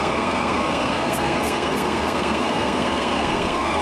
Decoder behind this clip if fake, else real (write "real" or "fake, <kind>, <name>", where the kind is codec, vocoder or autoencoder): fake, codec, SNAC